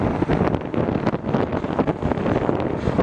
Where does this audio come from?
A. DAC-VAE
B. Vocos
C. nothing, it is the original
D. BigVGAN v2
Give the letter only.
C